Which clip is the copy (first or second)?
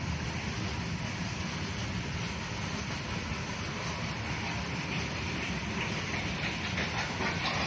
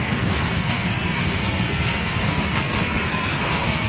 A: second